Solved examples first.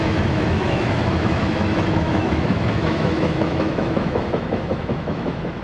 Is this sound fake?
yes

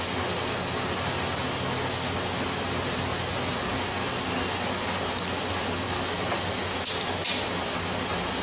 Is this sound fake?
no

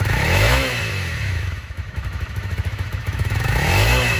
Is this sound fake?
yes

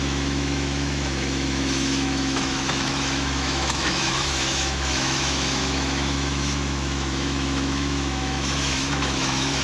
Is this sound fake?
yes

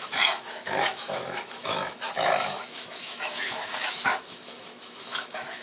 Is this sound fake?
yes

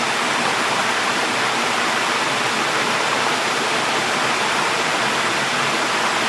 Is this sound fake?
no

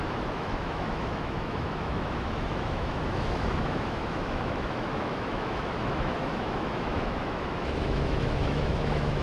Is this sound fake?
yes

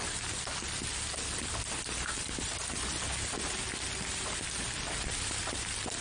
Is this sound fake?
no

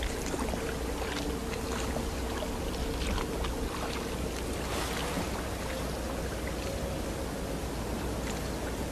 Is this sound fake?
no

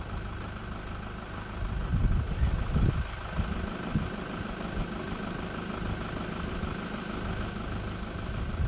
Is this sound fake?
no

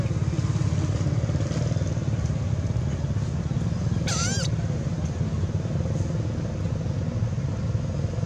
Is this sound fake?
no